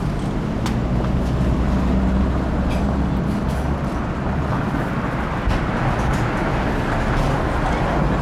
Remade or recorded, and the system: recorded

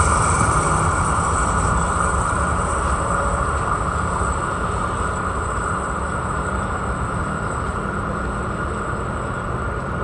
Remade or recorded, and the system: recorded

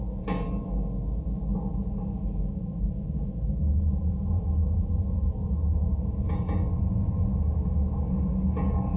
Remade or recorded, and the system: recorded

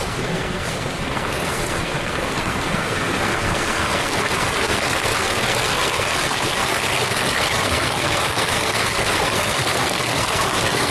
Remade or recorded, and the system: remade, codec, SNAC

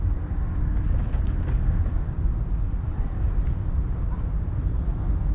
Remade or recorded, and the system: recorded